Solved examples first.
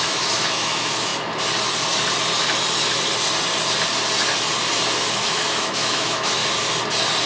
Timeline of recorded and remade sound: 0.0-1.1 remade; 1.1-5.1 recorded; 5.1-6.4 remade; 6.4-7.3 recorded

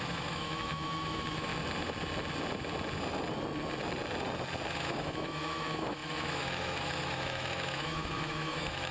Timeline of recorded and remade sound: 0.0-1.5 remade; 1.5-4.7 recorded; 4.7-8.9 remade

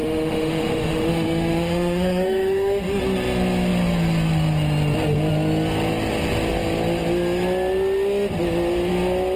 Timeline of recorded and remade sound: 0.0-3.0 remade; 3.0-9.4 recorded

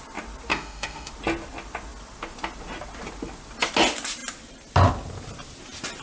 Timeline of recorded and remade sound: 0.0-0.5 recorded; 0.5-1.1 remade; 1.1-6.0 recorded

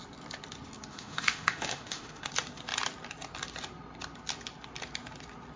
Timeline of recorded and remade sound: 0.0-0.9 recorded; 0.9-2.3 remade; 2.3-5.6 recorded